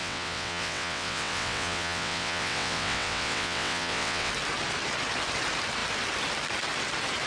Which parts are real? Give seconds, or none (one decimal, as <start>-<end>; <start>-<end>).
4.3-7.3

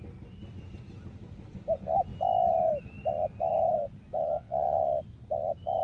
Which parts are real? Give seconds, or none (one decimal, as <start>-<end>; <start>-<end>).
0.0-4.2; 5.0-5.8

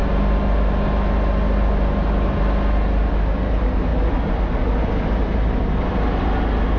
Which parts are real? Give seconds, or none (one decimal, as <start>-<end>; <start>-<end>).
0.0-6.8

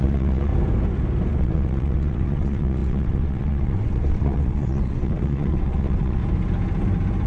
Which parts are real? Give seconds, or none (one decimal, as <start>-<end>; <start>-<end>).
0.5-1.4; 6.2-7.3

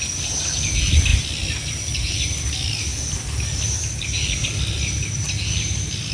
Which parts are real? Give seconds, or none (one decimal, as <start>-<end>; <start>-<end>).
0.0-6.1

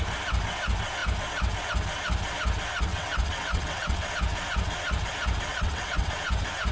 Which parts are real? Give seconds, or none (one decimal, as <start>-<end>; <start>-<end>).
0.0-2.9; 4.1-5.5; 6.1-6.7